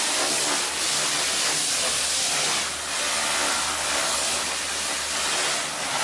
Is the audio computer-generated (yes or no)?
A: no